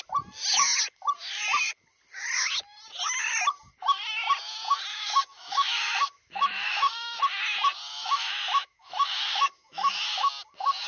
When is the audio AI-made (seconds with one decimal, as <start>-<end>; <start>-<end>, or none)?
4.9-7.2; 7.9-9.9